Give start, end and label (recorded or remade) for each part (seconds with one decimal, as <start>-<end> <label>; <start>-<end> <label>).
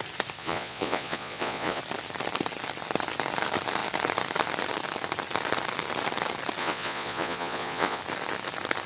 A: 0.0-0.4 recorded; 0.4-1.8 remade; 1.8-6.6 recorded; 6.6-8.0 remade; 8.0-8.9 recorded